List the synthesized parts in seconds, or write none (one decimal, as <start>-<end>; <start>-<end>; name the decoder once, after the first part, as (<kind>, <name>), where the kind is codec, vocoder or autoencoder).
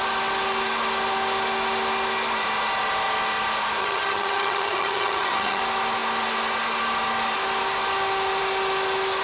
3.8-5.6 (vocoder, HiFi-GAN)